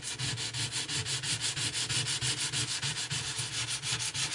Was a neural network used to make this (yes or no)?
no